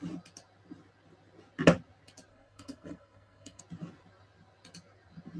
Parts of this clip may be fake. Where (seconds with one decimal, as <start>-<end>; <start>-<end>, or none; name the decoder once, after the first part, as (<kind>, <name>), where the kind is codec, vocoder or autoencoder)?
2.3-3.6 (codec, SNAC)